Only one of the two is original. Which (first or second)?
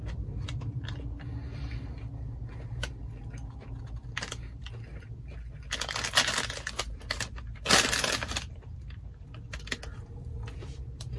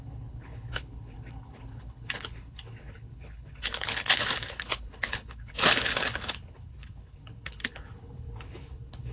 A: first